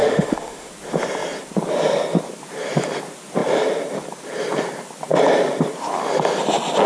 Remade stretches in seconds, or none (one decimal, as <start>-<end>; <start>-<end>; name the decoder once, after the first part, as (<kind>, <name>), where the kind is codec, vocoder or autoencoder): 0.0-0.7 (autoencoder, DAC-VAE)